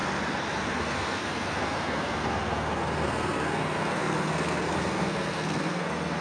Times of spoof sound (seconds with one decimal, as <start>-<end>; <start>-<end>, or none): 0.7-6.2